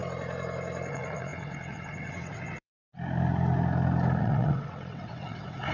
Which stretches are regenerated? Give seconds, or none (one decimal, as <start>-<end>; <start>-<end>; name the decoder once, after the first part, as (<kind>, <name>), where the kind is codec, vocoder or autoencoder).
0.9-2.7 (vocoder, WaveNeXt); 4.2-5.7